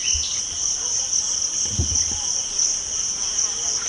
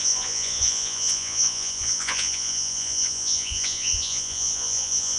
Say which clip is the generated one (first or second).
second